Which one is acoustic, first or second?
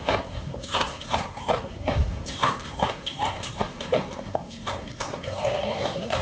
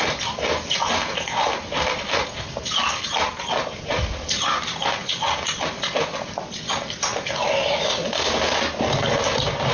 second